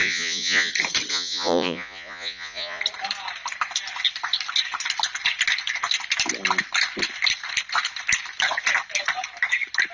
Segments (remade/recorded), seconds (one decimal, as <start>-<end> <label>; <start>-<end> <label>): 0.0-0.7 remade; 0.7-1.1 recorded; 1.1-2.8 remade; 2.8-9.9 recorded